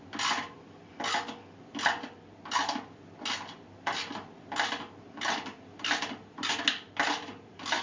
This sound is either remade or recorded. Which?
recorded